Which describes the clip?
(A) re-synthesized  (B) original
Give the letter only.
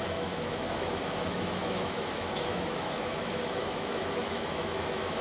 A